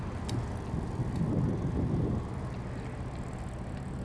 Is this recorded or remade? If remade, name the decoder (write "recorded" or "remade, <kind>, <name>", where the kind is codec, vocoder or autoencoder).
recorded